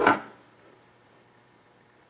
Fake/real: real